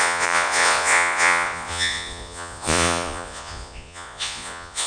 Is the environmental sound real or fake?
fake